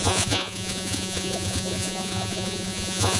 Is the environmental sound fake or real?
fake